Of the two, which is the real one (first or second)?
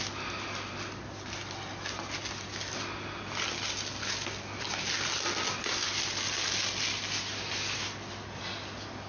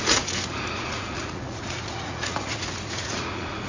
first